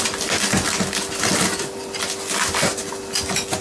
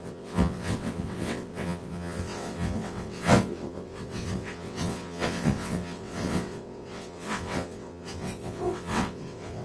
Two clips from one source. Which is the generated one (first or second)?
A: second